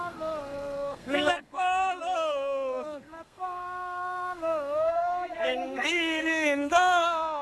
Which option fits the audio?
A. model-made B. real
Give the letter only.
A